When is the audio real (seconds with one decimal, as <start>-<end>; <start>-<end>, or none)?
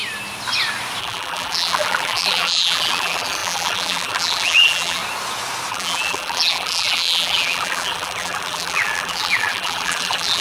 0.0-1.0; 5.0-5.7